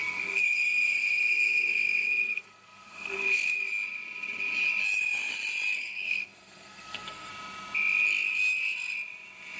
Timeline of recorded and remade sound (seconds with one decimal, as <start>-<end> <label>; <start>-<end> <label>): 0.0-3.6 remade; 3.6-5.8 recorded; 5.8-7.3 remade; 7.3-9.6 recorded